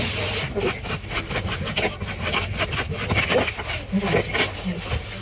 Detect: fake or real real